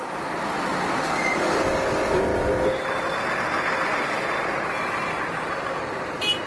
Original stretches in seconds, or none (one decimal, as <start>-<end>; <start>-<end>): 0.0-6.5